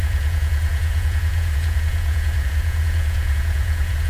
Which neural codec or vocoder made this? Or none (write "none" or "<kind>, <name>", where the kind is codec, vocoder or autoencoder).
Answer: vocoder, Vocos